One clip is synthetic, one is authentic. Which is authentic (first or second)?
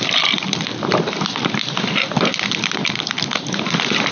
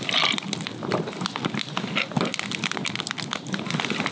second